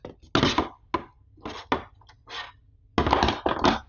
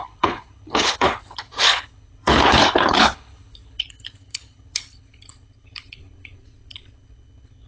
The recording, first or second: first